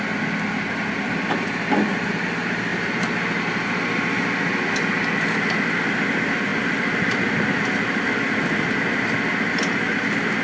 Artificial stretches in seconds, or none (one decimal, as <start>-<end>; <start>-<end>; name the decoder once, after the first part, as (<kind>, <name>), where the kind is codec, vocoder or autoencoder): none